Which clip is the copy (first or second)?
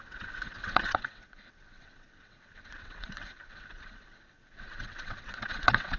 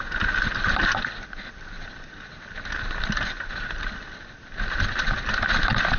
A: first